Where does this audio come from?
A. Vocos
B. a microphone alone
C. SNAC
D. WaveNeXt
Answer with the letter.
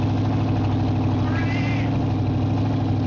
B